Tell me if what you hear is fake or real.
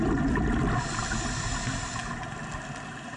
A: real